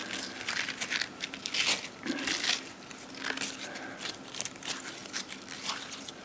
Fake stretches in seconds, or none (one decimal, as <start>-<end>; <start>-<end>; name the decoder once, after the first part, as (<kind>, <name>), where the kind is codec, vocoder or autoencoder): 3.1-6.2 (vocoder, BigVGAN v2)